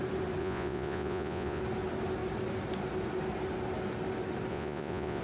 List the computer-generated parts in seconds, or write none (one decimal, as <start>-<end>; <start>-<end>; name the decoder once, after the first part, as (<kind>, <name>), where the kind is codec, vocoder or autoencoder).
0.4-1.6 (vocoder, Vocos); 4.5-5.2